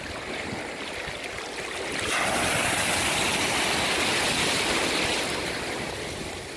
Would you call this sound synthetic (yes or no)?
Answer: no